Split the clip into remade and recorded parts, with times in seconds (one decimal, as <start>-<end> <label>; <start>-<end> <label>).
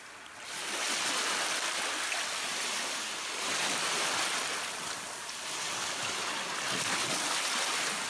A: 0.0-8.1 recorded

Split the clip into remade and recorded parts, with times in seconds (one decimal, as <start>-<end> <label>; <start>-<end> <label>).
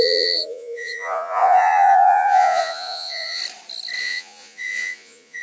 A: 0.0-3.4 remade; 3.4-4.0 recorded; 4.0-5.4 remade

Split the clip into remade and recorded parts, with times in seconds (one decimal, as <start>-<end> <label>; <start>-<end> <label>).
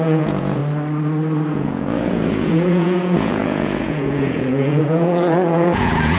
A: 0.0-0.6 remade; 0.6-1.5 recorded; 1.5-6.2 remade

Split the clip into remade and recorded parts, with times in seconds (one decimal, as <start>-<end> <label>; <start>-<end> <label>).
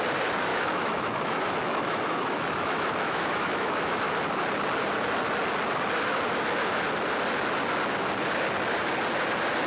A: 0.0-0.5 recorded; 0.5-4.0 remade; 4.0-9.7 recorded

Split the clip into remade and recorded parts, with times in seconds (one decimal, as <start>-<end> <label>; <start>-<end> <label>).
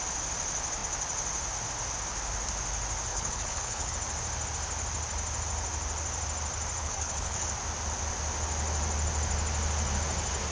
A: 0.0-3.1 recorded; 3.1-3.9 remade; 3.9-6.8 recorded; 6.8-7.5 remade; 7.5-10.5 recorded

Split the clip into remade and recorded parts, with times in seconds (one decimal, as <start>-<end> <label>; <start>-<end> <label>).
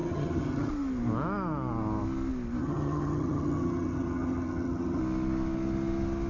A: 0.0-0.7 remade; 0.7-2.6 recorded; 2.6-5.0 remade; 5.0-6.3 recorded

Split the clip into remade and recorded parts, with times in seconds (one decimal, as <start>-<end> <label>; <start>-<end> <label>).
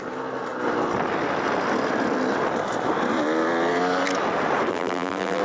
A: 0.0-4.7 recorded; 4.7-5.4 remade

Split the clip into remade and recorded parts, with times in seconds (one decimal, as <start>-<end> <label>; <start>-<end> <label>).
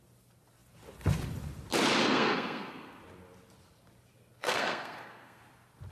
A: 0.0-2.0 recorded; 2.0-3.0 remade; 3.0-4.4 recorded; 4.4-5.4 remade; 5.4-5.9 recorded